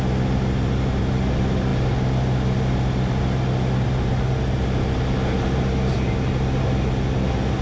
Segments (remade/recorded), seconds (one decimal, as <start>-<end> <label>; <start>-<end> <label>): 0.0-7.6 recorded